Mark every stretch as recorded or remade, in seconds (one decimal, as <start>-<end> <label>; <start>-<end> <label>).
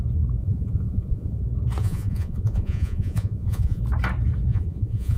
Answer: 0.0-0.4 recorded; 0.4-1.4 remade; 1.4-1.8 recorded; 1.8-3.8 remade; 3.8-4.5 recorded; 4.5-5.2 remade